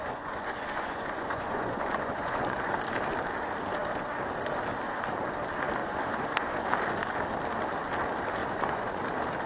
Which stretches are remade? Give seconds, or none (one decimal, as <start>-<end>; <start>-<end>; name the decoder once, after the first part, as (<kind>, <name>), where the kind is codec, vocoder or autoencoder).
0.0-2.7 (vocoder, Vocos); 5.8-6.6; 8.4-9.0